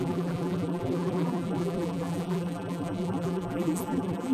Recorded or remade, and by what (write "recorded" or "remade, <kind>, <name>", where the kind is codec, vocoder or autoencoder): remade, vocoder, BigVGAN v2